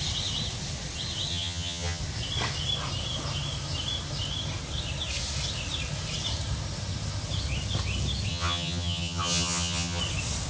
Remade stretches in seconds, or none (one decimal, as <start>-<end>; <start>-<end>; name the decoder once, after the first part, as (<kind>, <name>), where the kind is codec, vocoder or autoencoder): 1.3-2.0 (vocoder, HiFi-GAN); 8.3-10.0